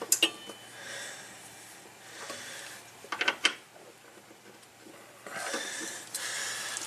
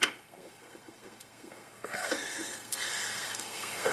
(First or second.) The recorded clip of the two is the first